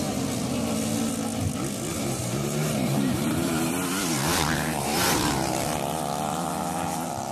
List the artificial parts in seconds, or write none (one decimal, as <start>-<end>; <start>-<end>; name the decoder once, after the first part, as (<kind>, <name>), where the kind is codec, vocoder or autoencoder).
1.9-5.6 (vocoder, BigVGAN v2)